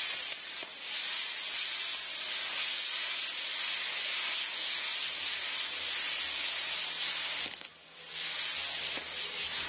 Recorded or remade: recorded